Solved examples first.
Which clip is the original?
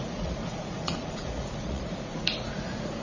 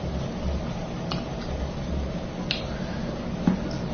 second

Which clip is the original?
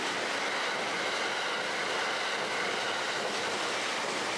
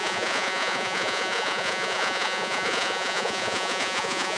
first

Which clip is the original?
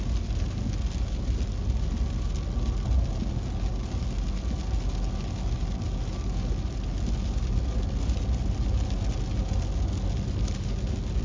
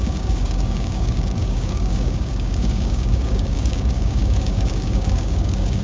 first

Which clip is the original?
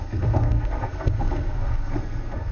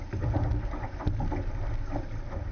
second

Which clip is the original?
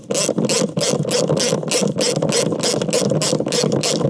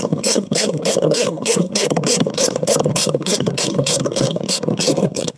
first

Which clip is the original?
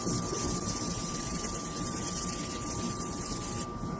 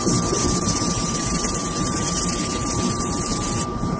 first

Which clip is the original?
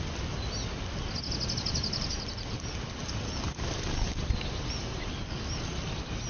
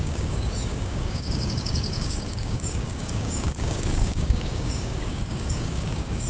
first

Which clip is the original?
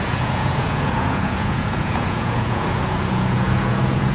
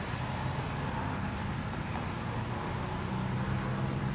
second